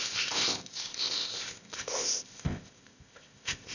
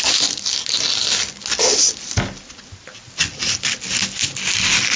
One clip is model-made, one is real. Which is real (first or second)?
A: second